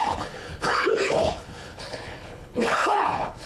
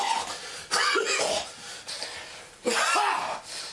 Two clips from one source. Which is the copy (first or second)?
first